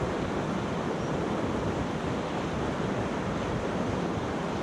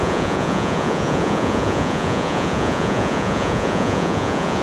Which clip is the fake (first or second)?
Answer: second